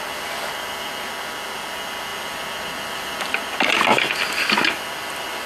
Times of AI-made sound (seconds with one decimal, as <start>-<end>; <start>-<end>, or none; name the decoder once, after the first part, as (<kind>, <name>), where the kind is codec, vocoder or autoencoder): none